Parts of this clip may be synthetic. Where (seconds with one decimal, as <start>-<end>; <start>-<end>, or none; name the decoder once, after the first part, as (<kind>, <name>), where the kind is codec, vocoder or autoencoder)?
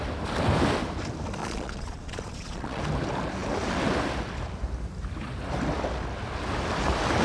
1.4-2.8 (vocoder, Vocos)